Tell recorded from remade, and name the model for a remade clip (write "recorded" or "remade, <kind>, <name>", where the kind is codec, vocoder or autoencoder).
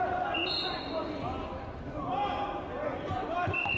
recorded